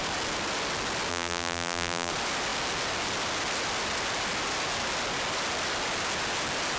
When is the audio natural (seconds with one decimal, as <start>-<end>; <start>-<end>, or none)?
0.0-1.1; 2.1-6.8